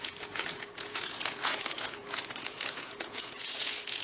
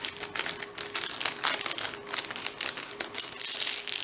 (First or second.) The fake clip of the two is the first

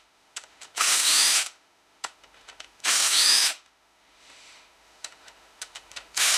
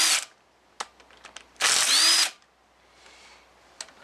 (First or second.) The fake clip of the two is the first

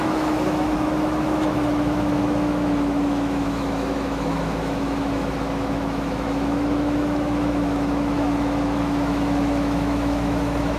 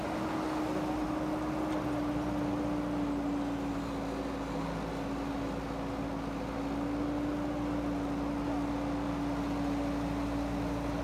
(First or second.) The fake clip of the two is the first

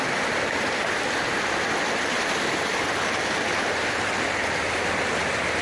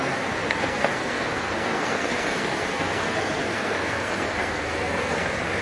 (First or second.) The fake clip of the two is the second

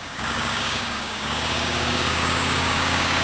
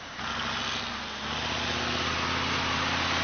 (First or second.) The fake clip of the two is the first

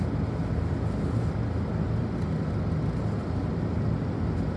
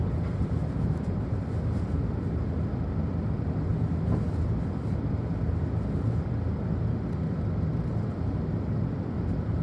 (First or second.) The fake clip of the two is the second